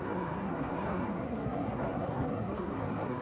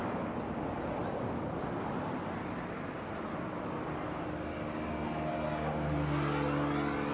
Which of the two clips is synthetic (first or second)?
first